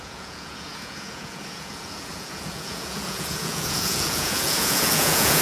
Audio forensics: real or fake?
fake